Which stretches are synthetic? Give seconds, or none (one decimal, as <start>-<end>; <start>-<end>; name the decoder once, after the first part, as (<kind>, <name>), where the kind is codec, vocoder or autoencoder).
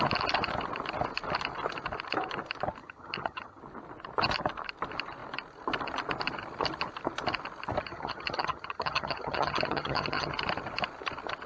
2.8-3.6 (vocoder, HiFi-GAN); 7.8-10.3